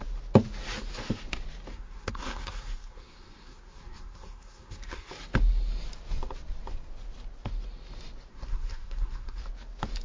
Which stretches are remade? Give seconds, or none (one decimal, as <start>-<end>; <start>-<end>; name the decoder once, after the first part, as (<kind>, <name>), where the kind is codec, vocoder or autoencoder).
1.7-5.1 (codec, SNAC); 8.3-9.4